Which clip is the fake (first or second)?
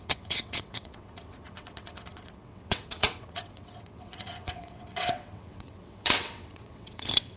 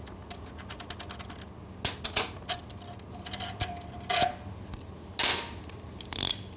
first